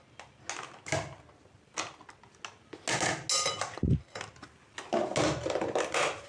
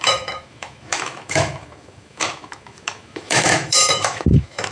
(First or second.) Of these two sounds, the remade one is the second